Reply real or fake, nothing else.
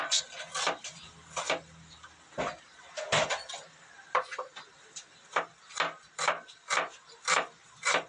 real